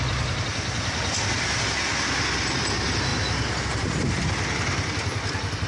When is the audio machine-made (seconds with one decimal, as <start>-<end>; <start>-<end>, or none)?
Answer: none